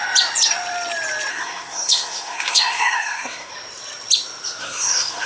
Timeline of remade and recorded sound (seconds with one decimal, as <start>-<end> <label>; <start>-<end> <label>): 0.0-1.3 recorded; 1.3-3.5 remade; 3.5-4.6 recorded; 4.6-5.3 remade